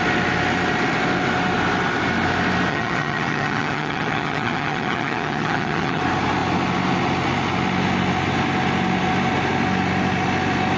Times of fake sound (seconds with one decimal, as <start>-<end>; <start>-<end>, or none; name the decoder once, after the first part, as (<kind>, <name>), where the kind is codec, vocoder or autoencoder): 2.7-6.0 (vocoder, HiFi-GAN)